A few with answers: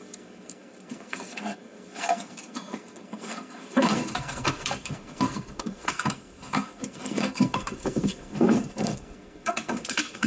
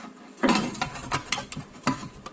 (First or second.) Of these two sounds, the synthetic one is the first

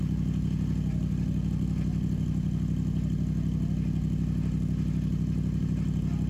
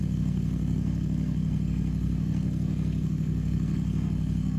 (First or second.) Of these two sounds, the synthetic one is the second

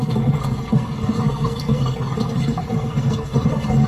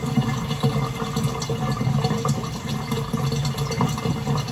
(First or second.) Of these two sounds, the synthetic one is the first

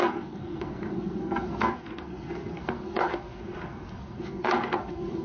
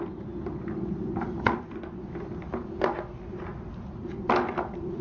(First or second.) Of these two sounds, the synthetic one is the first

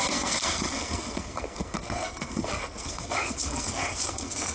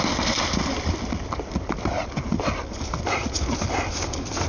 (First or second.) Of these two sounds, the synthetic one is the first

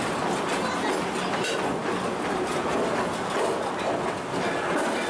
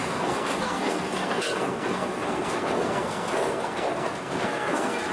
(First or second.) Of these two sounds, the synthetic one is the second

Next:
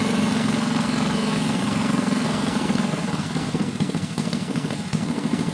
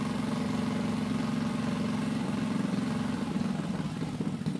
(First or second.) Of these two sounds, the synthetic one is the first